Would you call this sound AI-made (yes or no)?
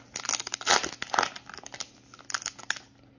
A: no